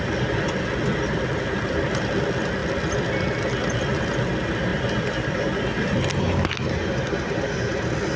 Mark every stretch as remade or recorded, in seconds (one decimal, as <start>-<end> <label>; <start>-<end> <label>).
0.0-8.2 recorded